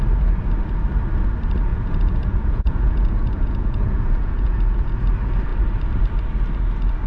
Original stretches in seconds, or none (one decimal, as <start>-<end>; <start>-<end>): 0.0-1.7; 4.9-7.1